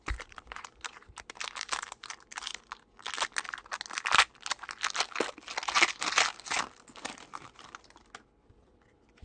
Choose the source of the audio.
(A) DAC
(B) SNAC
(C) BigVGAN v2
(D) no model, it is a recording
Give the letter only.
D